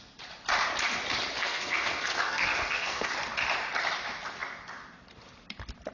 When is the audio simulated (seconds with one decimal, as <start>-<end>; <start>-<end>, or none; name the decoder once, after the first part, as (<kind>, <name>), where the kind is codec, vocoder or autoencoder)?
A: 1.4-3.1 (codec, SNAC)